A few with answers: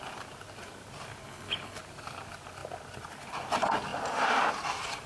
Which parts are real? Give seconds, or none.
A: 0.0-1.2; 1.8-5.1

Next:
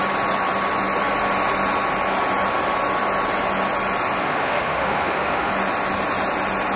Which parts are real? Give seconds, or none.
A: 0.0-4.2; 5.5-6.8

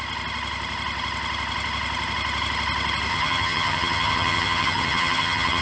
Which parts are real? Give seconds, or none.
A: 0.0-3.1

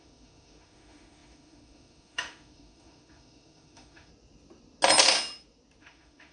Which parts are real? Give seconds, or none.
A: 4.1-5.8

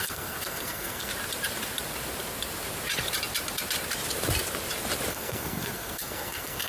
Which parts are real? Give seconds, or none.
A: 1.1-5.1

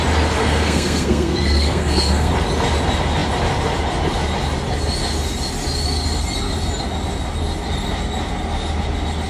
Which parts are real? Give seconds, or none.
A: 0.0-0.4; 2.3-9.3